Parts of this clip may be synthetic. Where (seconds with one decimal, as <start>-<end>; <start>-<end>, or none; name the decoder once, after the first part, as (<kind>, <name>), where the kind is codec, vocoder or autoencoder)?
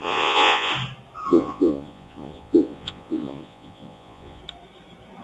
0.0-0.7 (vocoder, Vocos); 1.3-4.4